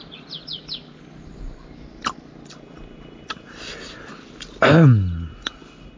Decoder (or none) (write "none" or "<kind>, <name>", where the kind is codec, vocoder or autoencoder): none